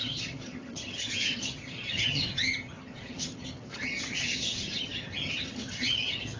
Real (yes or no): no